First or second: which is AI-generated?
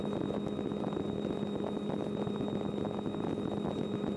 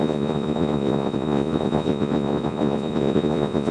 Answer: second